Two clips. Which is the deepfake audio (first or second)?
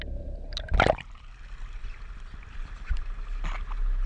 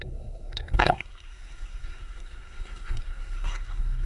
second